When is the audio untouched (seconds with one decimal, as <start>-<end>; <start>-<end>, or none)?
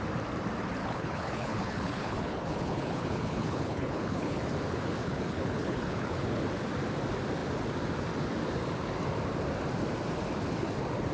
0.0-0.8; 4.4-5.0; 6.4-11.1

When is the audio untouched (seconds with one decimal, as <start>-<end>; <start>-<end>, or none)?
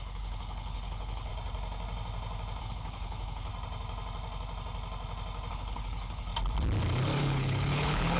1.3-2.6; 3.5-5.5; 6.3-7.2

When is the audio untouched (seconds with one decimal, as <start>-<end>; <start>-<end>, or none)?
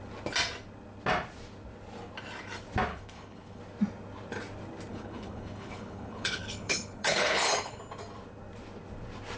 0.0-2.9; 3.6-4.9; 7.8-9.4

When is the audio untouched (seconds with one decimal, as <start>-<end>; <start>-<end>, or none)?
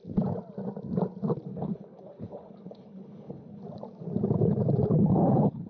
0.0-1.5; 3.6-4.9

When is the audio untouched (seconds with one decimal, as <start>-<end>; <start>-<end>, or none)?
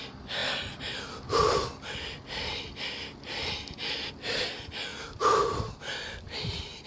0.0-6.9